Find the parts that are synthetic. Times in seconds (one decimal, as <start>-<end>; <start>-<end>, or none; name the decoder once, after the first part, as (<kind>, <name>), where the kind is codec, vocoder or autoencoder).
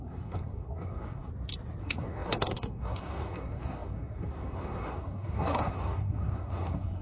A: 0.0-1.3 (codec, SNAC); 1.8-7.0